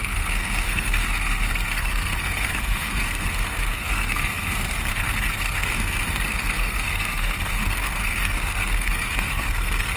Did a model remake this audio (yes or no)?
yes